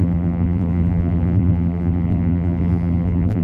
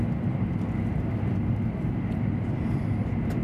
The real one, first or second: second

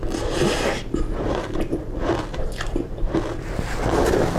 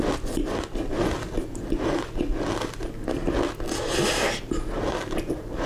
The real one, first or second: second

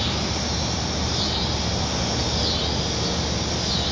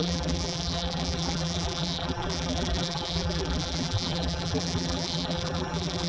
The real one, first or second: first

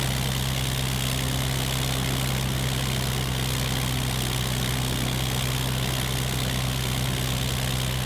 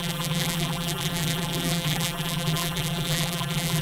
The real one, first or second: first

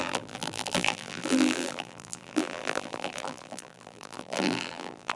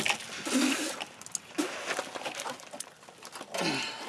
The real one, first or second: second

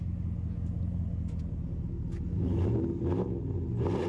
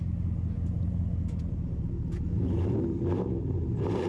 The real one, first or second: first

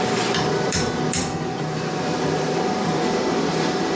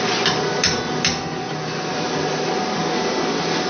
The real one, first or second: second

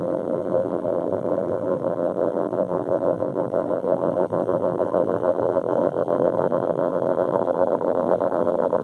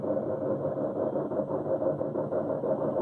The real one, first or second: second